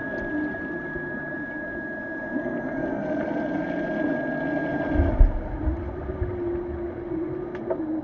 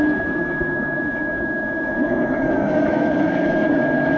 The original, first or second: first